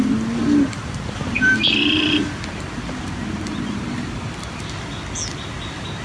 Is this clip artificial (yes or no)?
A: no